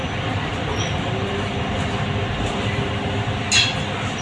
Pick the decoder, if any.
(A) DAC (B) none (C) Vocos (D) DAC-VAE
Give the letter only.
B